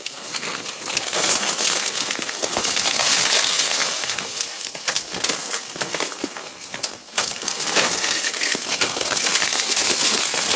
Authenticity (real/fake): fake